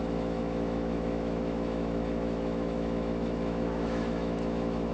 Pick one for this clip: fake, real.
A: fake